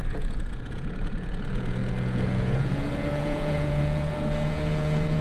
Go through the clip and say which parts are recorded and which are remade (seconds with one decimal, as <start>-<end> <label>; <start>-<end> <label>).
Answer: 0.0-5.2 remade